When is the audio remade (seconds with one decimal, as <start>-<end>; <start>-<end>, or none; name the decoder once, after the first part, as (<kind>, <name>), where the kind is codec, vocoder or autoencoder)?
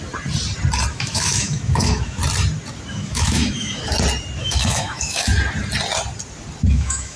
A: 0.9-2.2 (autoencoder, DAC-VAE); 2.9-3.8; 4.4-5.3; 6.7-7.2